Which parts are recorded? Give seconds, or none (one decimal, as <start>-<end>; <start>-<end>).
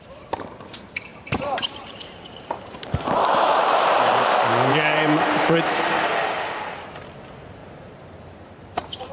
0.0-1.1; 6.2-7.6